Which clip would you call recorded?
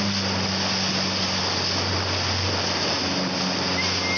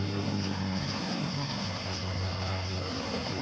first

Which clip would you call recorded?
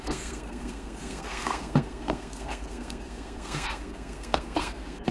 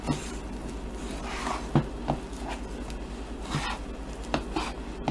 second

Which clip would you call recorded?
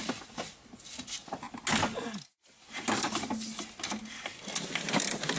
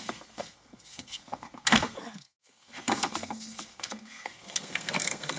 first